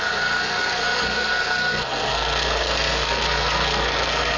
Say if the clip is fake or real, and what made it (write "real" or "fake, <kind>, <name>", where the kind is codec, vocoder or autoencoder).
fake, codec, SNAC